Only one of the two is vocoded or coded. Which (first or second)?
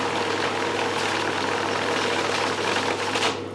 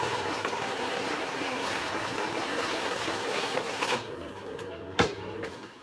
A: second